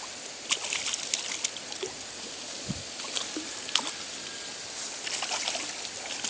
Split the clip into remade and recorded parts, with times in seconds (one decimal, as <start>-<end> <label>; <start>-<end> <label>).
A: 0.0-6.3 recorded